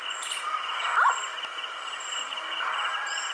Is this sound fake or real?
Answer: real